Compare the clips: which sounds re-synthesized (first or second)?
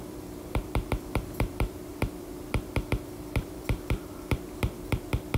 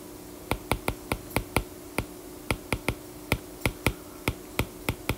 first